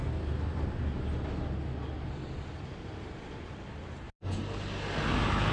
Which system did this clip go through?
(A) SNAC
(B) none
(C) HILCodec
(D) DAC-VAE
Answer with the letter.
B